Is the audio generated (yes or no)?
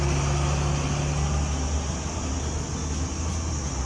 no